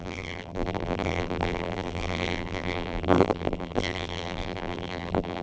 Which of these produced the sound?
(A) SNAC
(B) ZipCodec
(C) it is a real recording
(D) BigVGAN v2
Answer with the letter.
D